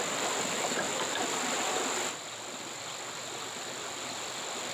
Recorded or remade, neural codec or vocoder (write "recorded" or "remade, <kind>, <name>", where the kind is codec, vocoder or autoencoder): remade, vocoder, BigVGAN v2